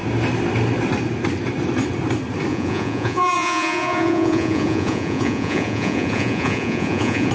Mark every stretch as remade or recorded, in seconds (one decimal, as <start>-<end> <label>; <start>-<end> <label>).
0.0-2.5 recorded; 2.5-7.3 remade